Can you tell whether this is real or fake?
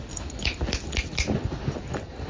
real